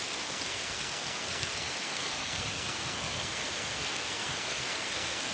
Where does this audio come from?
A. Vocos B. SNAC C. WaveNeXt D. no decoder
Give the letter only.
B